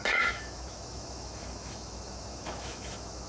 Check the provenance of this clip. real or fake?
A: fake